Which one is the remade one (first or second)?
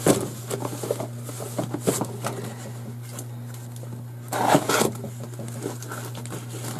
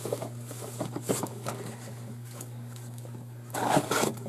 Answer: second